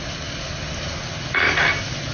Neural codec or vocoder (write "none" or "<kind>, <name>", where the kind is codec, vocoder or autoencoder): none